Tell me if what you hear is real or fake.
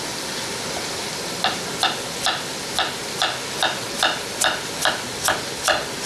real